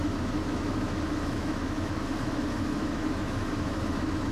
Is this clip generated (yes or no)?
yes